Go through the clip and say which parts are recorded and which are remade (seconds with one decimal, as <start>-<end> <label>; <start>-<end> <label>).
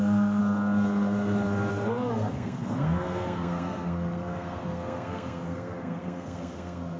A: 0.0-0.4 remade; 0.4-1.7 recorded; 1.7-7.0 remade